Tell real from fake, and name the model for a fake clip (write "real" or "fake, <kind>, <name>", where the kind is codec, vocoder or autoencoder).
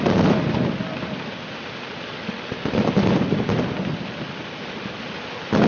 real